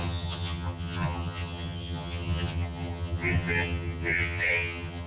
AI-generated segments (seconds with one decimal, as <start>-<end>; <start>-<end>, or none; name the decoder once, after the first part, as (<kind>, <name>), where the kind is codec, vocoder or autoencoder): 0.0-5.1 (vocoder, HiFi-GAN)

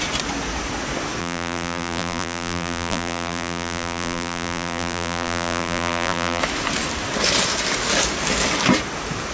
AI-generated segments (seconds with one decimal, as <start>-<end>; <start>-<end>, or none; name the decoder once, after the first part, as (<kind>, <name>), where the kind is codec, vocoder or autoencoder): 1.2-6.4 (vocoder, BigVGAN v2)